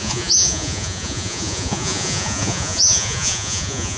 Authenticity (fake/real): fake